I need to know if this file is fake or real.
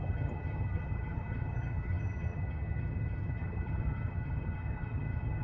fake